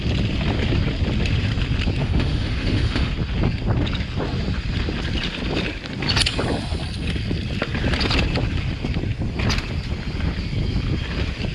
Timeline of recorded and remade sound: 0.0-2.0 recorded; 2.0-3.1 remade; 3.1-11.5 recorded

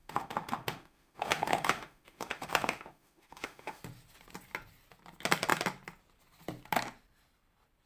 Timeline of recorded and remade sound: 0.0-3.8 remade; 3.8-7.9 recorded

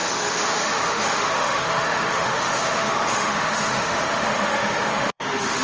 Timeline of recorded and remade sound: 0.0-5.6 remade

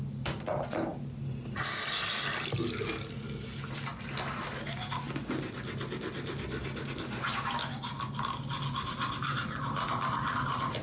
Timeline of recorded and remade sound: 0.0-10.8 recorded